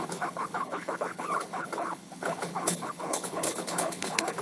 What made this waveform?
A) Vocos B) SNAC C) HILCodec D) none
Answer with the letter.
C